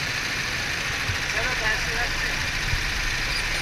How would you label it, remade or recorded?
remade